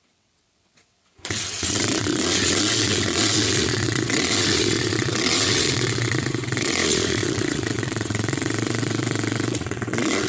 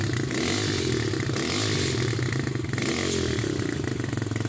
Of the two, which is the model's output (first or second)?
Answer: first